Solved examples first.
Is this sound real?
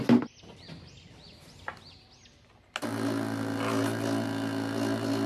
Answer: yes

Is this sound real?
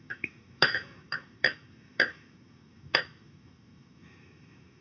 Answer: no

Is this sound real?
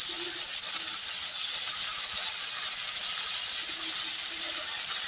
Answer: yes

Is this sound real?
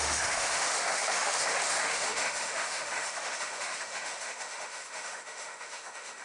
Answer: no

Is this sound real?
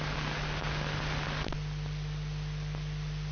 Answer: yes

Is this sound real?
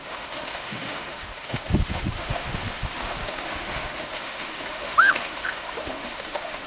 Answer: no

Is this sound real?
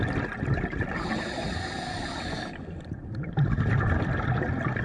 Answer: yes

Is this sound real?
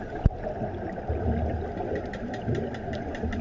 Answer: yes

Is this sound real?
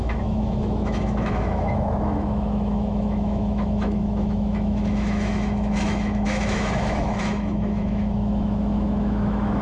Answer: no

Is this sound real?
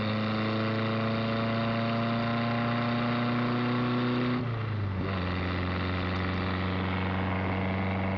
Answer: yes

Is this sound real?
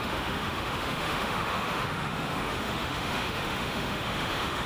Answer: no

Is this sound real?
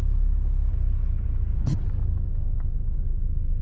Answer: yes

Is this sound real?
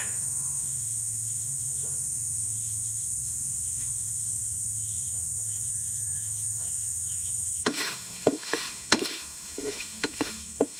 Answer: no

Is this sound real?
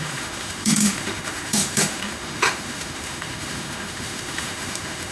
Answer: no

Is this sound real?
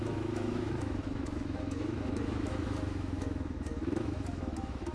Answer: no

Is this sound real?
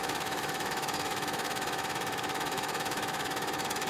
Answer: no